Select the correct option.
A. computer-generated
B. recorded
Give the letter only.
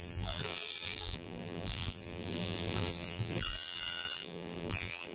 A